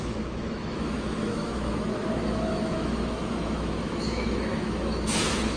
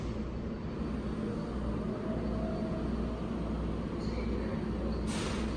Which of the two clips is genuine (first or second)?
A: second